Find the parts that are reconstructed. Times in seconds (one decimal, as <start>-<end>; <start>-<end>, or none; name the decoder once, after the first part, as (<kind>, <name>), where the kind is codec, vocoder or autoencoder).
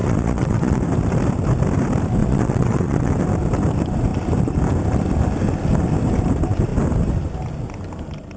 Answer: 0.0-0.8 (vocoder, WaveNeXt); 2.2-3.1